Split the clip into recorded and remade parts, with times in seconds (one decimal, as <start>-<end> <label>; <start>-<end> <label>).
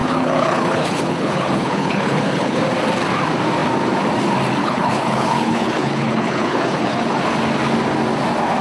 0.0-2.6 remade; 2.6-4.6 recorded; 4.6-7.2 remade; 7.2-8.6 recorded